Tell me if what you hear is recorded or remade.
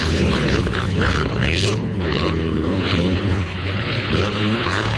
remade